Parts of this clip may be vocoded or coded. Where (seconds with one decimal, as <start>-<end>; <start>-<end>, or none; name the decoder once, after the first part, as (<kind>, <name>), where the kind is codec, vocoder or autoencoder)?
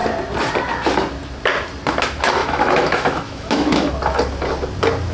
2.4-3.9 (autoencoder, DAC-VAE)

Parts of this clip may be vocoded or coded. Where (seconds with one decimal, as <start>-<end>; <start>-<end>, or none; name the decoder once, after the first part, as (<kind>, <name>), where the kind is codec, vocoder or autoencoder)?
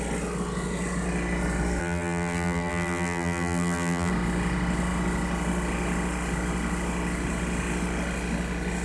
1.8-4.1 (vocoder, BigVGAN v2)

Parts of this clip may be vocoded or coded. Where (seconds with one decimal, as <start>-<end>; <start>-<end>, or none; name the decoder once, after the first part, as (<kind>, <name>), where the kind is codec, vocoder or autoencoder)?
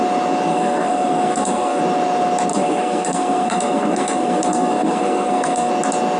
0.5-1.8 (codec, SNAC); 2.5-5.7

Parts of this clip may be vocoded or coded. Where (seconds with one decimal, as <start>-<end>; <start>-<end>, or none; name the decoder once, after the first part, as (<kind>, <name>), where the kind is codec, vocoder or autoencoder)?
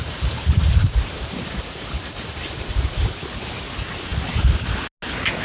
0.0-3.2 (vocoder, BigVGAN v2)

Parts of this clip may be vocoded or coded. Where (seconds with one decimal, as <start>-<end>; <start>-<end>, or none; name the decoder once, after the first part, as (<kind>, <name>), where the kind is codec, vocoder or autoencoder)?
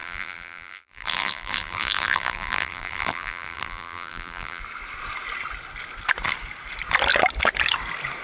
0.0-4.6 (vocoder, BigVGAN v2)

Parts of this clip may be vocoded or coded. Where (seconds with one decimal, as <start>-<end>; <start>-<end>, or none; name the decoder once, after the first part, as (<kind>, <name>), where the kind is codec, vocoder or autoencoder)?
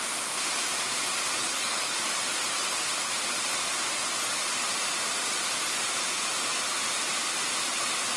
1.4-2.0 (codec, HILCodec)